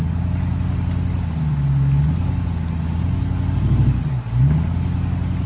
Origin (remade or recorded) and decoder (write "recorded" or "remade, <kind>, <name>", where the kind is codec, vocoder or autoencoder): recorded